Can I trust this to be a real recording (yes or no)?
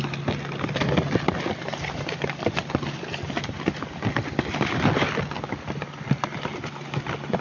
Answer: yes